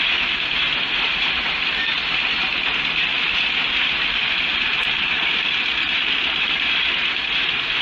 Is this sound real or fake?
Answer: real